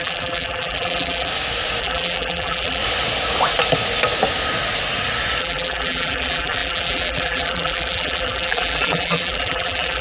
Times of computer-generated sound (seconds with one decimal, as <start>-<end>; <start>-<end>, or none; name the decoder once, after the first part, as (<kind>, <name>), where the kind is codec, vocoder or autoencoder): 0.0-1.3 (vocoder, BigVGAN v2); 1.8-2.8; 5.4-10.0